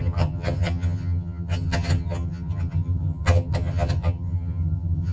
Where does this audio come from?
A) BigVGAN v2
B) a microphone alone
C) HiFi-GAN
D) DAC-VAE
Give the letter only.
C